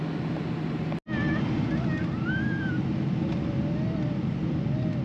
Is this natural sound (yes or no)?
yes